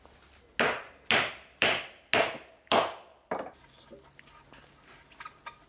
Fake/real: real